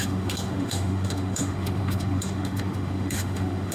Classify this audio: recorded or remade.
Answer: remade